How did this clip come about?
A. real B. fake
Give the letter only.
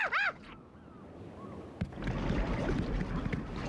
A